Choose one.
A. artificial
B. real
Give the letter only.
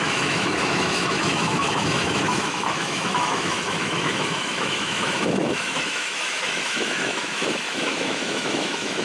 A